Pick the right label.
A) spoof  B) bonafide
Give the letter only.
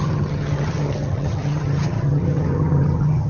A